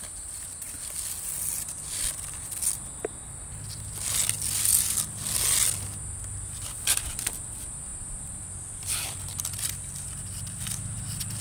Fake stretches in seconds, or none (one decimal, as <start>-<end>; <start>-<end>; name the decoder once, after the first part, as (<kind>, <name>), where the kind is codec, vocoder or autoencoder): 7.9-10.6 (vocoder, BigVGAN v2)